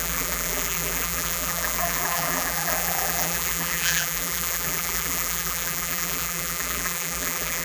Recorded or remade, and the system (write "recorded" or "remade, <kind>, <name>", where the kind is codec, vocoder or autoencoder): remade, vocoder, BigVGAN v2